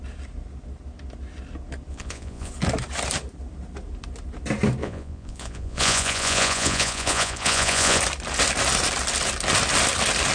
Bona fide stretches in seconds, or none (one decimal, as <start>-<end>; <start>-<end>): 0.0-1.9; 2.5-4.8; 8.0-10.3